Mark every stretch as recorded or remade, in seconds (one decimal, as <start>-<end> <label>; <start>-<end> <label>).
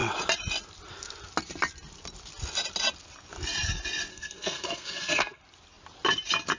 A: 0.0-4.1 recorded; 4.1-5.4 remade; 5.4-6.6 recorded